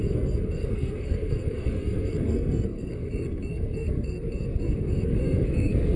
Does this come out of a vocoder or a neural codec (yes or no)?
yes